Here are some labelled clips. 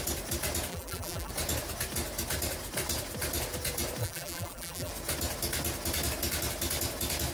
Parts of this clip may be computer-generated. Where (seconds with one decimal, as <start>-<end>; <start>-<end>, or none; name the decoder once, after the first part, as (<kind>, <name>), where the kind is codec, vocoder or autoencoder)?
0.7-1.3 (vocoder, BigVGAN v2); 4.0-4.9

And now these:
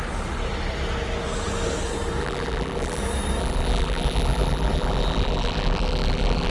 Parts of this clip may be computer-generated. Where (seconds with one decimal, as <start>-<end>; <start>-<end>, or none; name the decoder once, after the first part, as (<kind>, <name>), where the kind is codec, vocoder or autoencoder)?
2.2-3.0 (vocoder, BigVGAN v2); 3.4-6.5

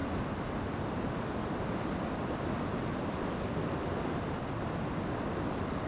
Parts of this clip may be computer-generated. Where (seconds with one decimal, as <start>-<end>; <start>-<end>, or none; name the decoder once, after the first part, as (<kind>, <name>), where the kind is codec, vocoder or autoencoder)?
0.0-3.5 (vocoder, BigVGAN v2)